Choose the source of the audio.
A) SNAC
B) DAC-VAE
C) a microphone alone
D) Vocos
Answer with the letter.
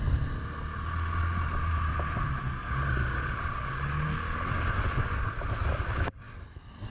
C